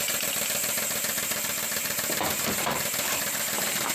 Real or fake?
fake